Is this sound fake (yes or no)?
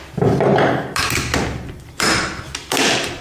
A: no